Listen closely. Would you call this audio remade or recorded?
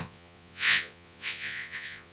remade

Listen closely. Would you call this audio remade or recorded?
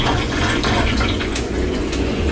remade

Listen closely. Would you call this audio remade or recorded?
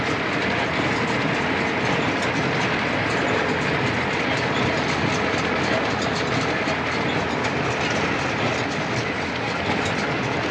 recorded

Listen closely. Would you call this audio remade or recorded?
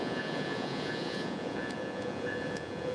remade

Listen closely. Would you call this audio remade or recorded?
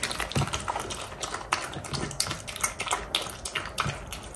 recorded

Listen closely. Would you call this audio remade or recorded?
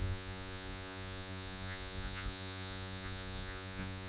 remade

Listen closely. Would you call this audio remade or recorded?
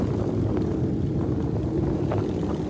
recorded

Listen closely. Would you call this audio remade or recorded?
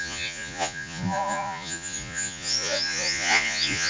remade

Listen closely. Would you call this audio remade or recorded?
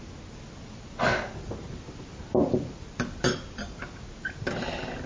recorded